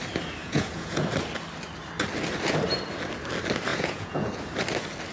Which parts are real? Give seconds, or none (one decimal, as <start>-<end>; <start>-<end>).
0.0-0.4; 1.1-3.7; 4.3-5.1

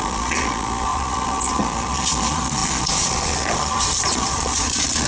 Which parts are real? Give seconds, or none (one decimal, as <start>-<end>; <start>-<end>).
none

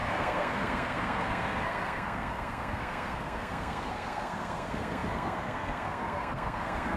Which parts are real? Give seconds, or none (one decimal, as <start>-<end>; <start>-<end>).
none

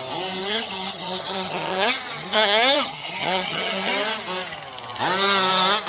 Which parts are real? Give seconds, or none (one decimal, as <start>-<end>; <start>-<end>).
0.0-0.4; 3.9-5.9